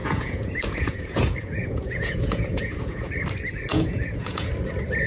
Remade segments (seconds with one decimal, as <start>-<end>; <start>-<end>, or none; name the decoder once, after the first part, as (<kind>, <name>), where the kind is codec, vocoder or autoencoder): 0.0-3.1 (vocoder, Vocos); 3.7-4.5